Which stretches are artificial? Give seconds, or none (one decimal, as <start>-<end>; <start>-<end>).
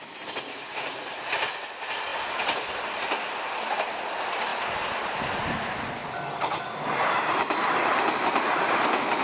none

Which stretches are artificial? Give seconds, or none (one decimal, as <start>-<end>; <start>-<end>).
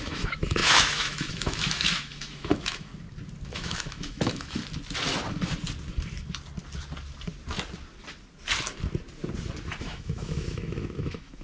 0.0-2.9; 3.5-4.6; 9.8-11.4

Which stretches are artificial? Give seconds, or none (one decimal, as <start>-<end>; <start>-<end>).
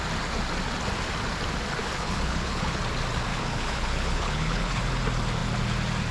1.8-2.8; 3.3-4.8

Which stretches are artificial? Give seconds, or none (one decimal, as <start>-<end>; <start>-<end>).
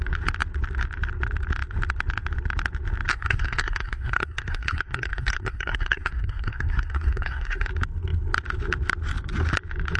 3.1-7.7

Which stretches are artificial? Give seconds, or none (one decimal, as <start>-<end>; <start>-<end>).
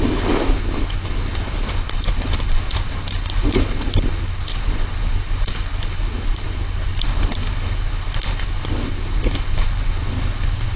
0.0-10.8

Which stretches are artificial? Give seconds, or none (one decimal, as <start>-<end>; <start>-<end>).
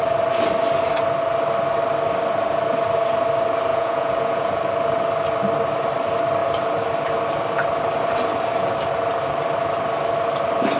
3.7-4.6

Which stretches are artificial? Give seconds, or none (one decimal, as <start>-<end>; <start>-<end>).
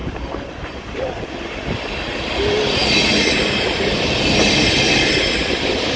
none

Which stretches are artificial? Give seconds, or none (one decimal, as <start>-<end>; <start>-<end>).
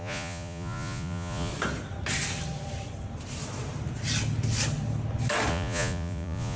0.0-1.5; 5.5-6.6